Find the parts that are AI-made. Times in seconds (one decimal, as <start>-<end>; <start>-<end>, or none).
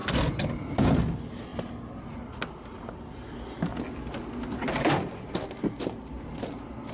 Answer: none